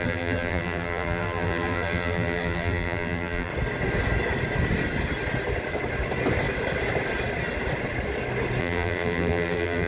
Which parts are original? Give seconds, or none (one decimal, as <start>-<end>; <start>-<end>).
3.5-8.6